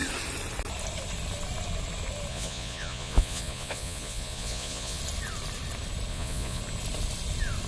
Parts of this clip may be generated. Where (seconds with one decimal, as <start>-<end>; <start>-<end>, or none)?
2.3-5.0; 6.1-6.6

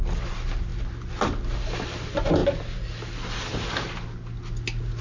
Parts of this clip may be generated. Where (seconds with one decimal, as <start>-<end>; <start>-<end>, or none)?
none

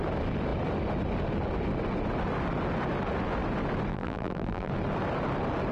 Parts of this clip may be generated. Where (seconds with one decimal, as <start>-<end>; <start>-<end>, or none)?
3.9-4.7